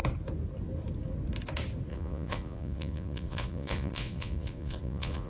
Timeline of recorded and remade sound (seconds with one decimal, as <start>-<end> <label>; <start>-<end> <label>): 0.0-1.9 recorded; 1.9-5.3 remade